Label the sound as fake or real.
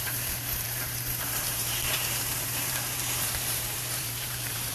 fake